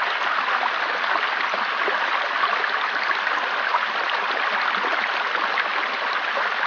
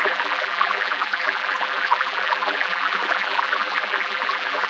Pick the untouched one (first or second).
first